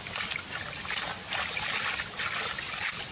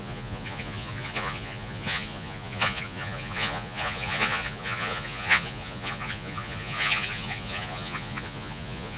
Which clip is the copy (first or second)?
second